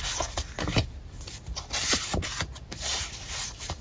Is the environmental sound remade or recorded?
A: recorded